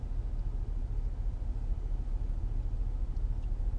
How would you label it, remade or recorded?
recorded